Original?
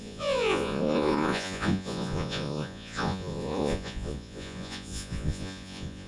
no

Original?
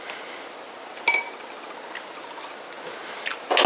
yes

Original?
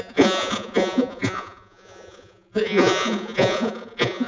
no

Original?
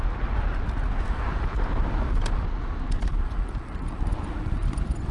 yes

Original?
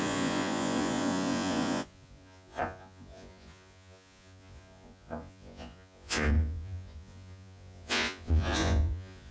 no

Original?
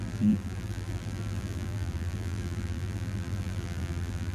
no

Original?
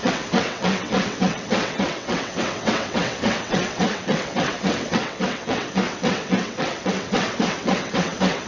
no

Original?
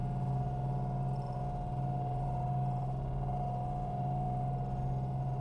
yes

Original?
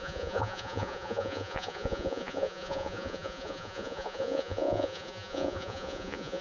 no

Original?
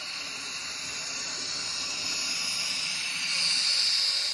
yes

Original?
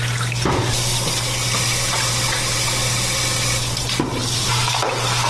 yes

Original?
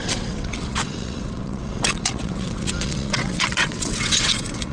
no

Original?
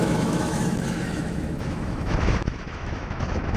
no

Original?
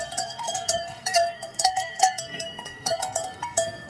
no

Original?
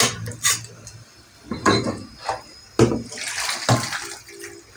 yes